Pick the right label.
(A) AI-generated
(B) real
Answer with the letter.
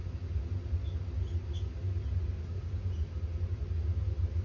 B